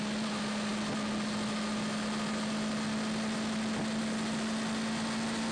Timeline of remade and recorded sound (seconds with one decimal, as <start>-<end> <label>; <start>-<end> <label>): 0.0-5.5 recorded